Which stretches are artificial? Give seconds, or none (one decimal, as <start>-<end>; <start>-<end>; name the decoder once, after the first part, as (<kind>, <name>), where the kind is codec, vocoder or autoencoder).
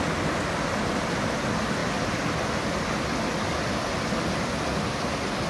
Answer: none